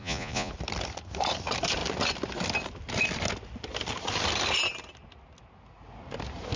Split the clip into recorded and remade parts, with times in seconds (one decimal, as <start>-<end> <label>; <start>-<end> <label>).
0.0-0.5 remade; 0.5-6.6 recorded